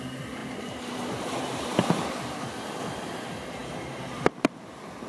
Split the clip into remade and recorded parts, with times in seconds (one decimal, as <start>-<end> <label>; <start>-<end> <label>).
0.0-3.6 recorded; 3.6-4.6 remade; 4.6-5.1 recorded